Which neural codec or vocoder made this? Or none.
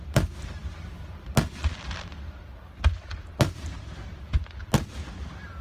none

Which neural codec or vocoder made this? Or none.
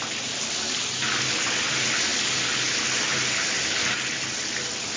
none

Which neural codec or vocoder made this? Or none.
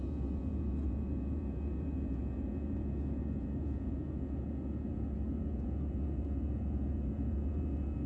vocoder, Vocos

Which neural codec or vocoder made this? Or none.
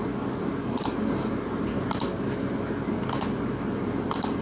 none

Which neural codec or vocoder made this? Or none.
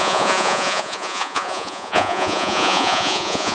vocoder, Vocos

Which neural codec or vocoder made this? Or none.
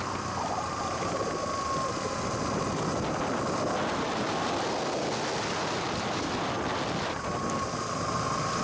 none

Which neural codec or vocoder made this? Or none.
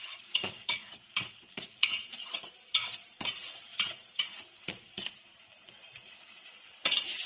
vocoder, Vocos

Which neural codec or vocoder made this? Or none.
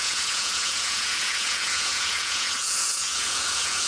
vocoder, Vocos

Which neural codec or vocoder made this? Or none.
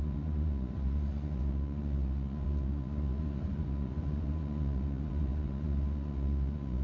vocoder, Vocos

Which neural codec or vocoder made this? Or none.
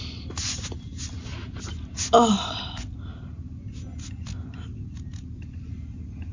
none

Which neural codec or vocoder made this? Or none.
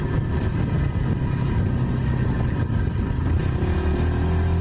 none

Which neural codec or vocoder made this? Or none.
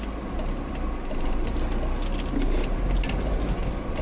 none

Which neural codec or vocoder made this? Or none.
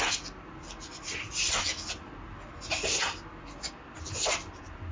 none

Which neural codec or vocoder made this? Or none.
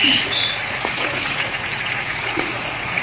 vocoder, Vocos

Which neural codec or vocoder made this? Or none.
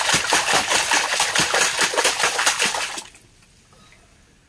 none